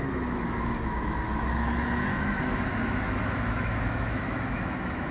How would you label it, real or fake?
fake